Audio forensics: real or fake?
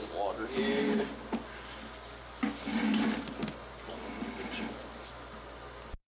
real